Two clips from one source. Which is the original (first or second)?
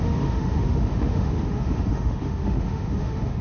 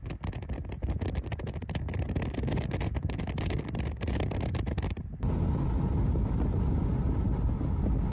second